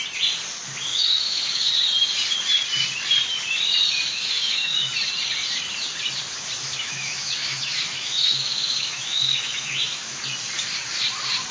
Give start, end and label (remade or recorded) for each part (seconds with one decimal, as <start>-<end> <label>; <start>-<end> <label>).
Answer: 0.0-0.9 recorded; 0.9-1.7 remade; 1.7-4.1 recorded; 4.1-4.9 remade; 4.9-6.6 recorded; 6.6-10.2 remade; 10.2-11.5 recorded

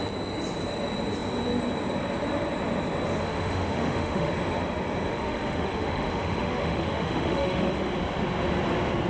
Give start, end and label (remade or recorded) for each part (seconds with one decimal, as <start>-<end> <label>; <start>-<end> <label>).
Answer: 0.0-3.2 recorded; 3.2-4.3 remade; 4.3-5.1 recorded; 5.1-7.9 remade; 7.9-9.1 recorded

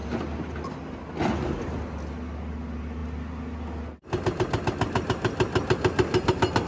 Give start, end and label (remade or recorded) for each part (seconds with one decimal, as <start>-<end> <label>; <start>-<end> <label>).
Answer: 0.0-6.7 recorded

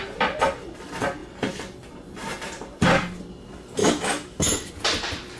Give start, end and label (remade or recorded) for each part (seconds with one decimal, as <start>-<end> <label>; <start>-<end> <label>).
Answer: 0.0-3.8 recorded; 3.8-4.7 remade; 4.7-5.4 recorded

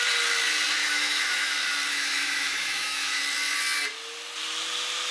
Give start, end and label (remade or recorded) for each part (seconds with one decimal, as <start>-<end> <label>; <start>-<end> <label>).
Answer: 0.0-0.8 recorded; 0.8-1.5 remade; 1.5-1.9 recorded; 1.9-3.2 remade; 3.2-5.1 recorded